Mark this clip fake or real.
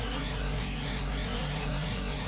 fake